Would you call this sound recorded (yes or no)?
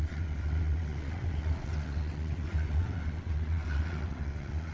no